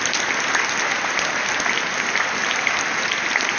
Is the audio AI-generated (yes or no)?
no